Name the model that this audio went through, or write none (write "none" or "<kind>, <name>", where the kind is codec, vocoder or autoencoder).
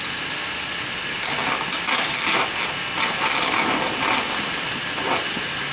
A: none